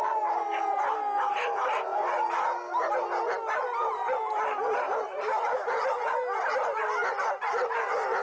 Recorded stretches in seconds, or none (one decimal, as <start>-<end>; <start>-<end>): 0.0-8.2